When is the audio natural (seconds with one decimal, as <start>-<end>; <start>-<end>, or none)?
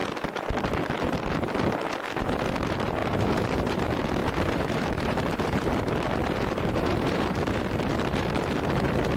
0.0-3.0; 3.8-4.2; 5.7-6.2; 7.6-9.2